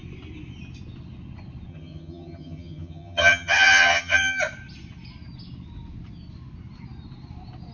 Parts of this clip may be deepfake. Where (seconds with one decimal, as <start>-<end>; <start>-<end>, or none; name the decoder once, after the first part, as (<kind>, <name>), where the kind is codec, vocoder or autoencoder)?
1.7-4.4 (vocoder, HiFi-GAN)